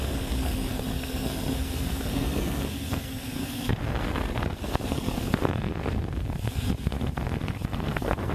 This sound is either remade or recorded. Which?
remade